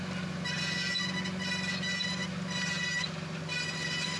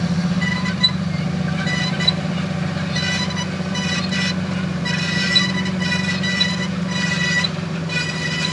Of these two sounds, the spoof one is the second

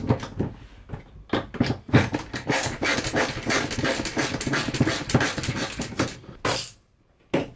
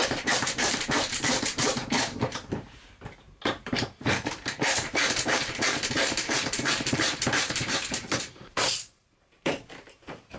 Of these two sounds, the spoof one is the second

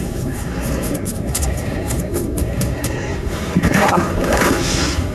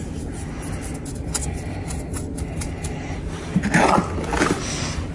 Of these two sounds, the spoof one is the first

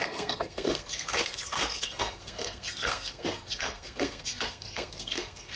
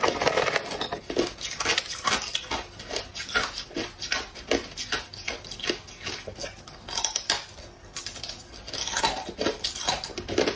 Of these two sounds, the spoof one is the first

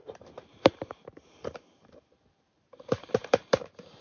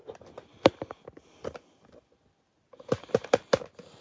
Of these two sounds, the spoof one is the first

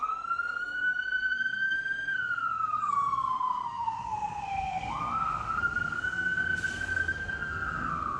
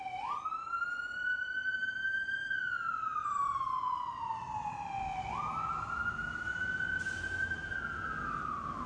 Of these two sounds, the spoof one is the first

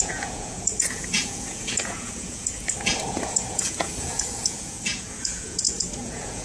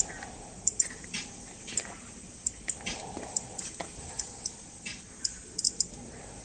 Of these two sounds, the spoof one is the first